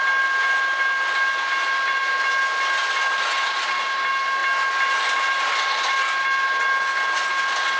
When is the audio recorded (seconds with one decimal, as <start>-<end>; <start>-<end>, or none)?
0.0-7.8